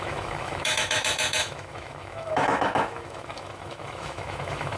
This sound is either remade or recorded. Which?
remade